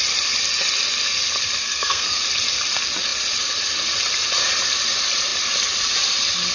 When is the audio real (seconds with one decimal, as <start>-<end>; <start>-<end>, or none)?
0.0-1.7; 2.2-6.5